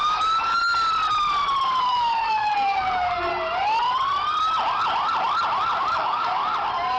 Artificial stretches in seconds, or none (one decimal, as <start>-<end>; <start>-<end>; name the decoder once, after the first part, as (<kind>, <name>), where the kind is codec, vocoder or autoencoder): 0.0-0.6 (codec, DAC); 1.8-3.3; 5.8-6.4